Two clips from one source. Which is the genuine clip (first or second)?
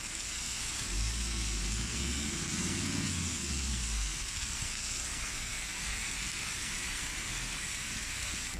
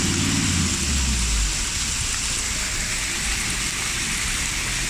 second